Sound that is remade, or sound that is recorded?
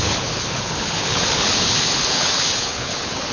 remade